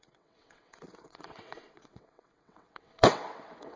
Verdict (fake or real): fake